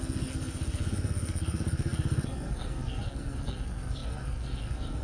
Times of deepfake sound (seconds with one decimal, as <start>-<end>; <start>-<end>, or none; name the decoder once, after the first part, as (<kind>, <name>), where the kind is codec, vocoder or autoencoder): 0.0-5.0 (codec, SNAC)